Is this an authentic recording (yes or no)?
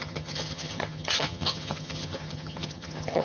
no